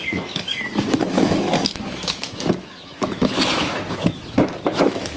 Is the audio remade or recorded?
remade